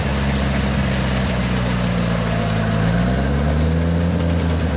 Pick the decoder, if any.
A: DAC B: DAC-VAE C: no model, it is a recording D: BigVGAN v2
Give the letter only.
C